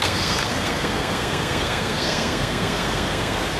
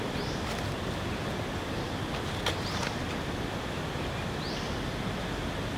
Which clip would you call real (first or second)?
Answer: second